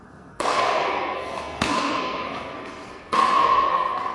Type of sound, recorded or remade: remade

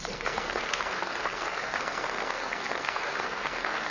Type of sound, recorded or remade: remade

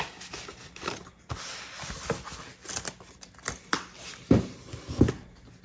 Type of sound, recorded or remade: recorded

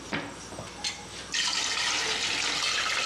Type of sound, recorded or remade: recorded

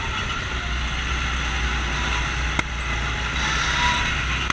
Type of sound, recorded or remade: recorded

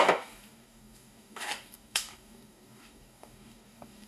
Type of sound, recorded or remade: remade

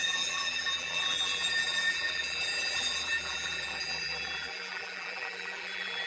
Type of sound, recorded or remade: remade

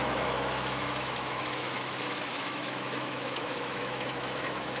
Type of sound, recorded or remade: remade